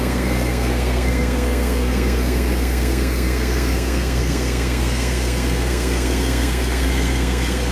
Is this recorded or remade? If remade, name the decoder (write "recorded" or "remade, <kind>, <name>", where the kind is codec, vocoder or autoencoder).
remade, codec, SNAC